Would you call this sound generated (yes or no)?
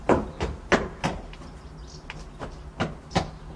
no